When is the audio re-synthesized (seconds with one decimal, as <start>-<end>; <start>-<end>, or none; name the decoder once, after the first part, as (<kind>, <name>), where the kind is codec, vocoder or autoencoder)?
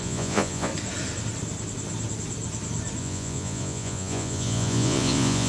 0.0-0.7 (vocoder, Vocos); 3.0-5.5